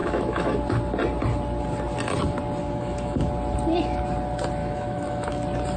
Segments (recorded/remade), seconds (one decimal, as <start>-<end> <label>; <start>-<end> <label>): 0.0-0.6 remade; 0.6-2.6 recorded; 2.6-3.3 remade; 3.3-4.6 recorded; 4.6-5.3 remade; 5.3-5.8 recorded